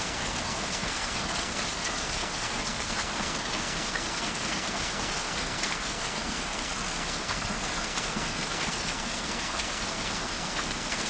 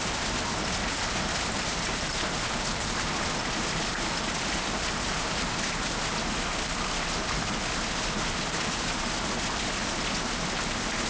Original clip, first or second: second